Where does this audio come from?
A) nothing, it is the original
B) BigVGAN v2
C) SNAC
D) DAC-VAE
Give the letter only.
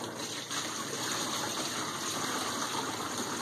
A